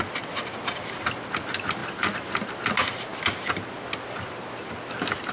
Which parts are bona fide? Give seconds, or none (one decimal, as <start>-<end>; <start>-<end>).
0.0-5.3